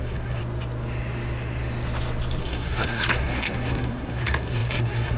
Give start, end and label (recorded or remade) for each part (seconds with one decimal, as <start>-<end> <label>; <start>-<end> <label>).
0.0-0.4 remade; 0.4-2.4 recorded; 2.4-5.2 remade